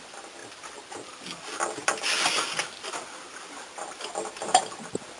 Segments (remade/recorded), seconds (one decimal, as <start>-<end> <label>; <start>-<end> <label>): 0.0-5.2 recorded